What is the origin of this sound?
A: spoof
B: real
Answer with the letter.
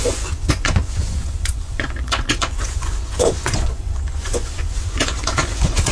A